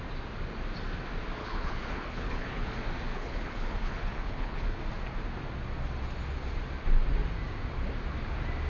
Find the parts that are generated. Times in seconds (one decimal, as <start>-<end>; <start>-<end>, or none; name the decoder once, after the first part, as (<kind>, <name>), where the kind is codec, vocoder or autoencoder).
1.4-2.7 (codec, HILCodec); 3.1-4.8